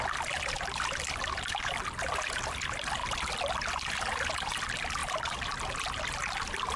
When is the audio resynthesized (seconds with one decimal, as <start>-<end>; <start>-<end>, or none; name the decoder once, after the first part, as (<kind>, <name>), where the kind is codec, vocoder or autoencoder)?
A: none